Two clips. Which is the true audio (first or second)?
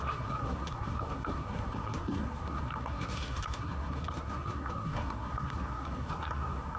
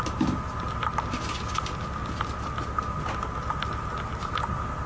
second